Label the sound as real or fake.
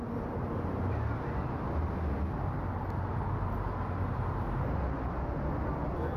real